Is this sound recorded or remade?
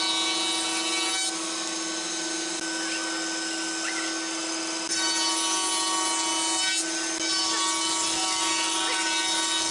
recorded